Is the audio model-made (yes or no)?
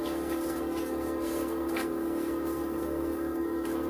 yes